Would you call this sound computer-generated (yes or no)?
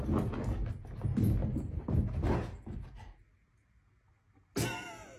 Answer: no